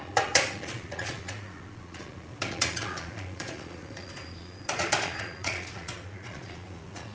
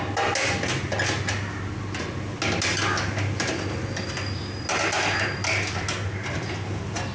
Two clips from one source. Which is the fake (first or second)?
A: first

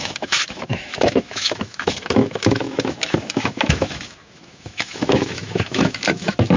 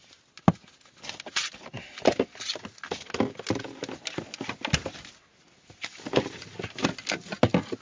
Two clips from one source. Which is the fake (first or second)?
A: first